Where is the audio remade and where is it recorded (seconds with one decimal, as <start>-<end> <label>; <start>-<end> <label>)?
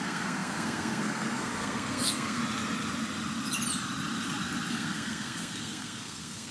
0.0-2.4 remade; 2.4-4.7 recorded; 4.7-6.5 remade